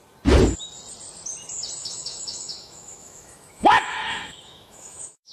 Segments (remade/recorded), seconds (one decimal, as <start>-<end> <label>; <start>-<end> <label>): 0.0-1.8 recorded; 1.8-5.3 remade